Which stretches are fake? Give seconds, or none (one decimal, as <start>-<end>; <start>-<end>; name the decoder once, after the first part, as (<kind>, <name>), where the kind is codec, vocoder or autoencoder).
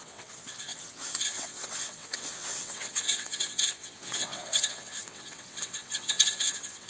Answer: 0.0-6.9 (vocoder, WaveNeXt)